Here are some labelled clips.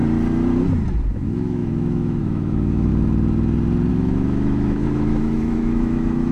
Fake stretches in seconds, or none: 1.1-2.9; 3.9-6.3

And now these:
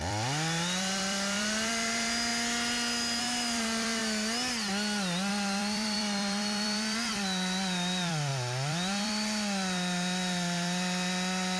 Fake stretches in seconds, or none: 0.0-2.3; 3.2-4.0; 5.3-11.6

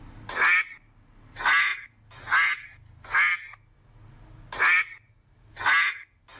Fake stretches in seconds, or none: none